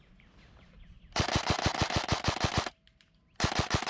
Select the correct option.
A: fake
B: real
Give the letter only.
B